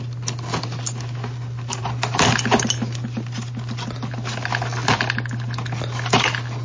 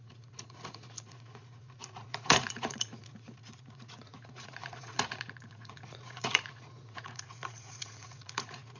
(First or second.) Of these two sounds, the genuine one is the first